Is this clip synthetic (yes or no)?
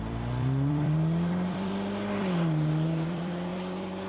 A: yes